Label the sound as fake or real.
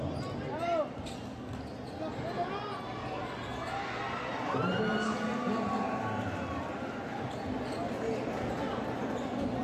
real